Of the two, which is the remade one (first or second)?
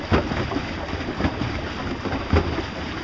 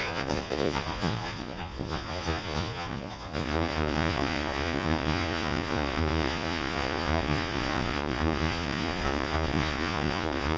second